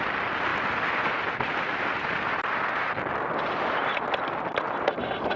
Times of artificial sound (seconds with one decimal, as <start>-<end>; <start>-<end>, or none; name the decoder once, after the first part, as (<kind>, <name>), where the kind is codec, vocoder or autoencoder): none